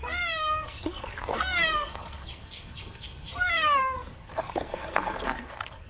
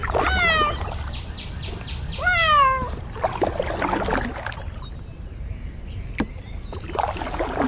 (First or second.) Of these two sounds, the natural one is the second